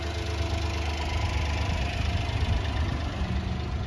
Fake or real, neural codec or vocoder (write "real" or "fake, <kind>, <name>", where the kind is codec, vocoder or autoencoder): real